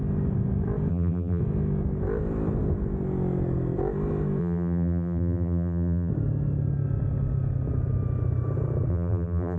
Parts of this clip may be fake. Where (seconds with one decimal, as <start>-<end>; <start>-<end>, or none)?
0.9-1.4; 4.4-6.1; 8.9-9.6

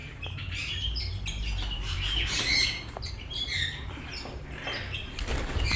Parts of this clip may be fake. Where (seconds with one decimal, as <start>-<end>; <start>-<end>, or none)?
0.0-4.1; 4.8-5.8

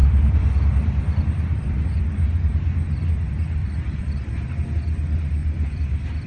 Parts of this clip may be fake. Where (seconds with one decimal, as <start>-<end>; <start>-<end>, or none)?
0.0-1.8; 3.6-4.5; 5.4-6.3

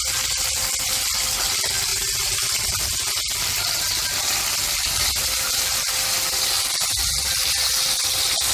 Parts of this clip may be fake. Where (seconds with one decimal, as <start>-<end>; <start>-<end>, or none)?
1.9-2.7